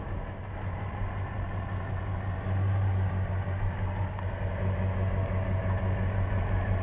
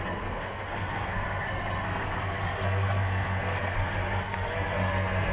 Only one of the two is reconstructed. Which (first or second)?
second